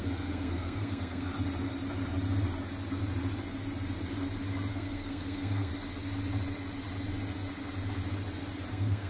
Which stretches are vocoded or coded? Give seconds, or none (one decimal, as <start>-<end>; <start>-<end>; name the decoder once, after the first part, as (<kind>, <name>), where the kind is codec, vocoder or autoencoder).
0.0-1.3 (codec, SNAC); 4.7-5.7; 8.7-9.1